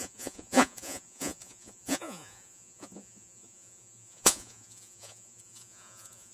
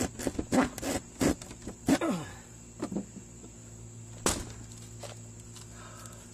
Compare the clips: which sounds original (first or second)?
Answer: second